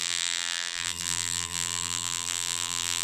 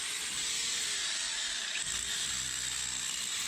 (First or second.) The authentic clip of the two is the second